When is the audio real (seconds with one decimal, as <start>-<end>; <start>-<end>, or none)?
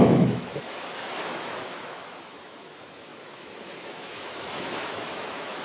none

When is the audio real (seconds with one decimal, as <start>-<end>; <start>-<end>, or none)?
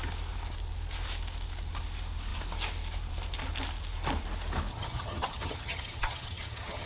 0.0-4.7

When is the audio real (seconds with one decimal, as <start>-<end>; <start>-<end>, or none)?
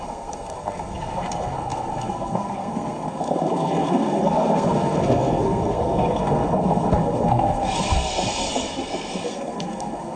none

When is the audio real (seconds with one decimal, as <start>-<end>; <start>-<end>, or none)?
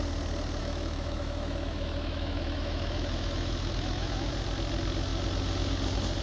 0.0-0.6; 4.3-6.2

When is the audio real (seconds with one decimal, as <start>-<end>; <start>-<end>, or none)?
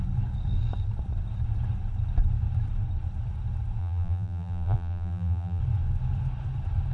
0.0-3.8; 5.6-6.9